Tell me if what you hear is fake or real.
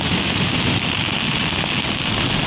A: real